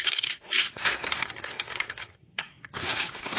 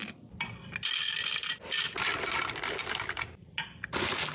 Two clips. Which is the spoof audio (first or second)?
first